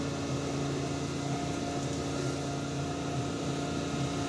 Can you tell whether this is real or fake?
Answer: real